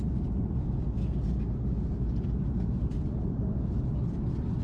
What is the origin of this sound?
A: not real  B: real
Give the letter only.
B